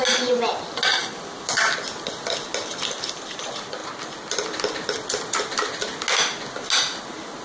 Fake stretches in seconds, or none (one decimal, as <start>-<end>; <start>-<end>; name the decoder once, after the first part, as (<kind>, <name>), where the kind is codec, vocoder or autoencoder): 1.0-2.1 (vocoder, BigVGAN v2)